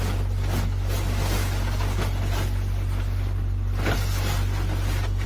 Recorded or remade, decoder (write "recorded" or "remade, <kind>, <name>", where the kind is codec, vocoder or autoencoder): recorded